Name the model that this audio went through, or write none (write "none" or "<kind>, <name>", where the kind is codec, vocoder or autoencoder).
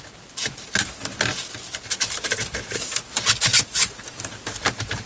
none